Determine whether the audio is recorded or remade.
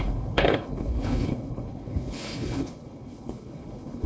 remade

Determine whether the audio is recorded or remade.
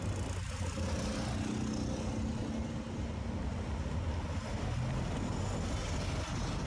recorded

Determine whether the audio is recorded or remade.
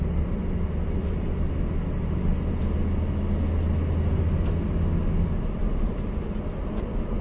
recorded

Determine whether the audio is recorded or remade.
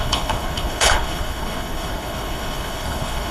remade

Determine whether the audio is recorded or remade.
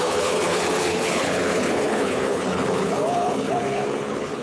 remade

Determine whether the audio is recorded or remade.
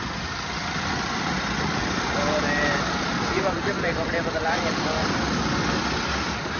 recorded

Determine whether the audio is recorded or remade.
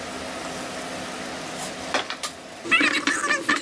recorded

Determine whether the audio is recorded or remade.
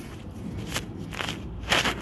recorded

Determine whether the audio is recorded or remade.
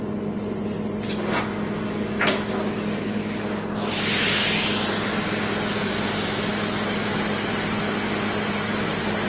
recorded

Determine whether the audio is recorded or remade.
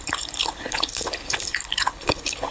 remade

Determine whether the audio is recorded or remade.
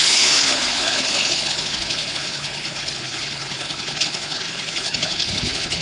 remade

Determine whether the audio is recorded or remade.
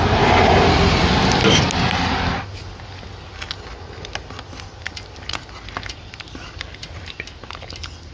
recorded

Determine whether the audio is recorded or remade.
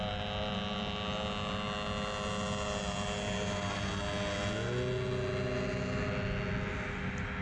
recorded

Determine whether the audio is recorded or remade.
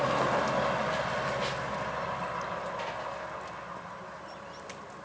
recorded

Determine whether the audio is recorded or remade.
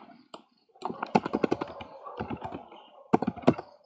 recorded